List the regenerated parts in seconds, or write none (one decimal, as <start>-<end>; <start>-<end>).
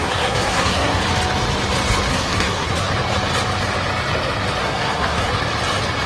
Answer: 0.0-1.0; 2.1-2.9; 4.6-5.3